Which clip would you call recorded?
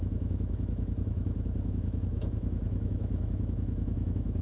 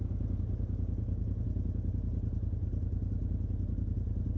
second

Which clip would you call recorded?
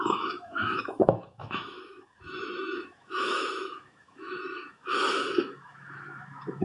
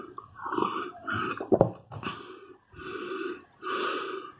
second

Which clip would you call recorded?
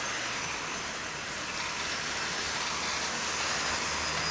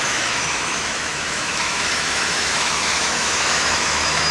first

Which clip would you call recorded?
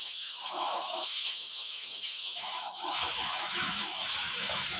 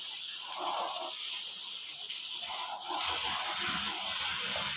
second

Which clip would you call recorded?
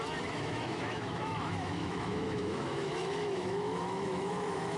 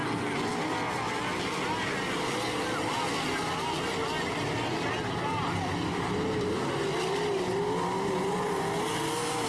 second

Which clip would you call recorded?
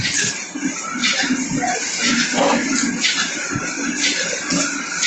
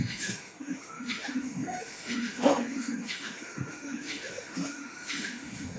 first